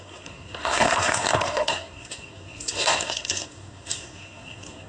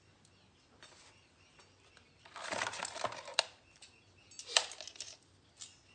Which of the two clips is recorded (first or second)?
second